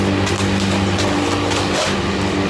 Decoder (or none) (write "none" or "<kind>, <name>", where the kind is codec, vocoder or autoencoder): none